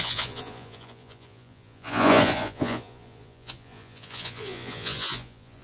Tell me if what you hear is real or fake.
fake